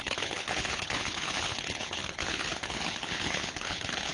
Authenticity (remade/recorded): remade